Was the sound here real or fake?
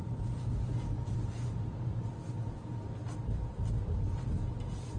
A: real